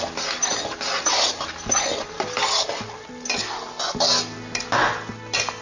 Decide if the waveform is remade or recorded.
recorded